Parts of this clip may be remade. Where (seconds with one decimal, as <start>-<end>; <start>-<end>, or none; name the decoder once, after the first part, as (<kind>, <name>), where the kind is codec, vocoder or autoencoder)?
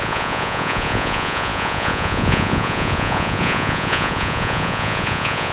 0.0-5.5 (vocoder, Vocos)